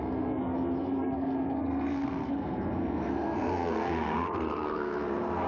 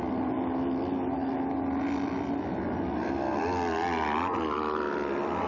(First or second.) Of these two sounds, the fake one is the first